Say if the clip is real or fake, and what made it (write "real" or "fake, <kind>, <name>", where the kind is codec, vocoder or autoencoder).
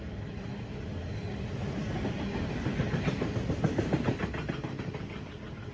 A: real